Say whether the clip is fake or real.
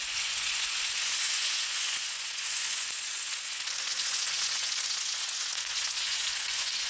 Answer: fake